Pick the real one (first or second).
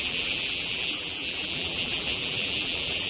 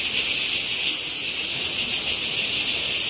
second